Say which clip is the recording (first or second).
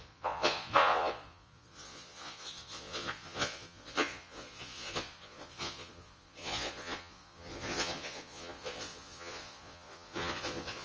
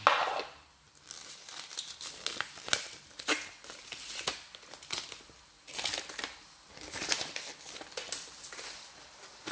second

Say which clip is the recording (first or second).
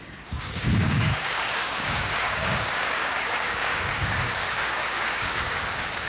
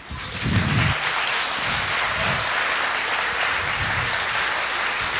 second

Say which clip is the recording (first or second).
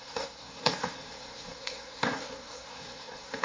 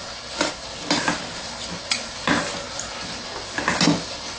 second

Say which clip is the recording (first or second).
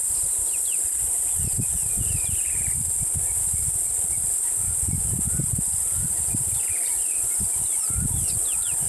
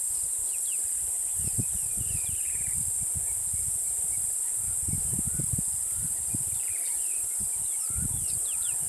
first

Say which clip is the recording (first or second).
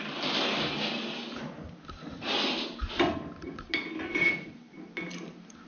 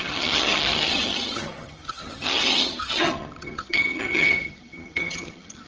first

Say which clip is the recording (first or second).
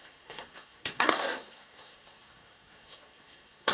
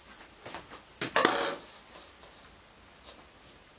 second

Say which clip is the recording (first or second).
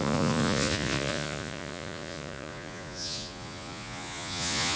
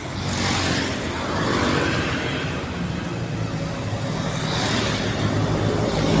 second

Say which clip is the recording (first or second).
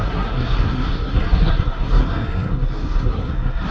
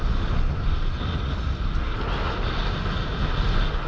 second